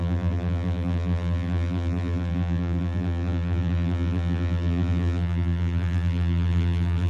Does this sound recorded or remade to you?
remade